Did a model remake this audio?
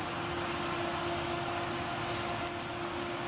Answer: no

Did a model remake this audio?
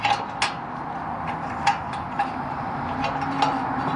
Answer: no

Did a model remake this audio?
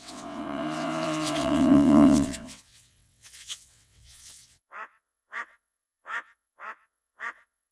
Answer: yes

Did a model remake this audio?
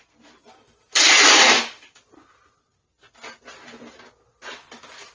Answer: no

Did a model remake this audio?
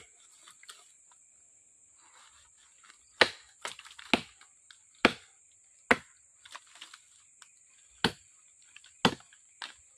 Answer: no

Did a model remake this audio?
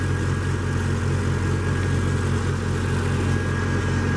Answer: no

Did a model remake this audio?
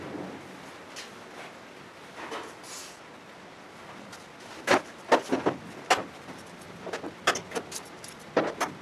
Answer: no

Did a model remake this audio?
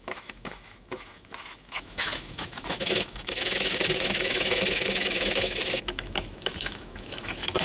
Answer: yes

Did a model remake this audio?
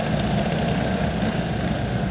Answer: no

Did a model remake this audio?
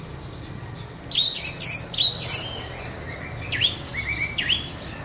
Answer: no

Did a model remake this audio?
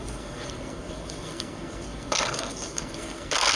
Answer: yes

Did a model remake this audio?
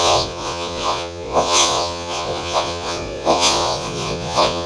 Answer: yes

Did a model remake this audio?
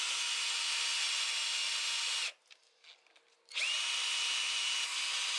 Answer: no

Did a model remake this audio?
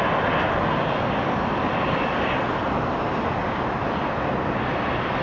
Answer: no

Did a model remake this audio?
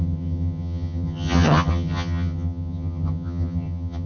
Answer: yes